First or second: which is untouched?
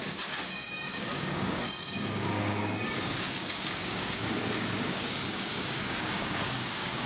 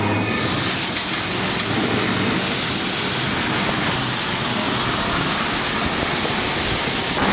second